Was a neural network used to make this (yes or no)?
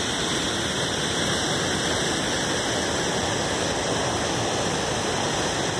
no